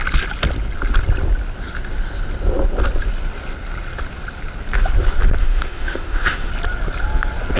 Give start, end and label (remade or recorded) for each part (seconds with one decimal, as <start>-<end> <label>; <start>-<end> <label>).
0.0-5.4 recorded; 5.4-6.5 remade; 6.5-7.6 recorded